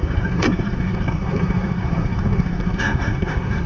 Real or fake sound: fake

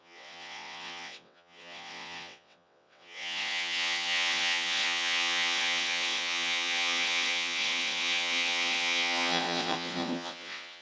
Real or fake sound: fake